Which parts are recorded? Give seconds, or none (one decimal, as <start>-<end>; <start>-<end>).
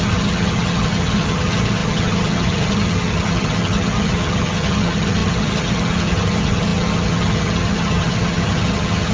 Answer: none